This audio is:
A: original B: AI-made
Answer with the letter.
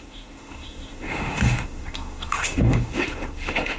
B